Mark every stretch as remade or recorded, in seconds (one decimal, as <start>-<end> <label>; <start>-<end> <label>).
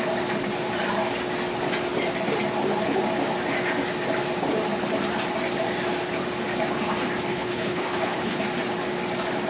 0.0-7.3 recorded; 7.3-8.4 remade; 8.4-9.5 recorded